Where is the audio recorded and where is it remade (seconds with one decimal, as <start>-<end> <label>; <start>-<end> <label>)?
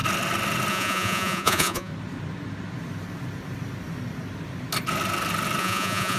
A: 0.0-0.7 recorded; 0.7-1.9 remade; 1.9-5.6 recorded; 5.6-6.2 remade